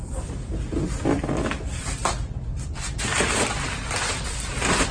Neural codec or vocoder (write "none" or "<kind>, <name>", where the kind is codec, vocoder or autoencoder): none